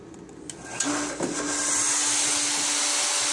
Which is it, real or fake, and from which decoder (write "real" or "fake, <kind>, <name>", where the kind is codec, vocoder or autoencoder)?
real